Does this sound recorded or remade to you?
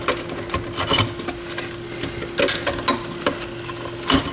recorded